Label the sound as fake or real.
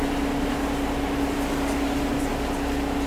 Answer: real